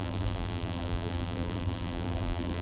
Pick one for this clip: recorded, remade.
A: remade